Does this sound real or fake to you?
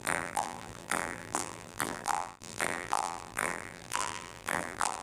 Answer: fake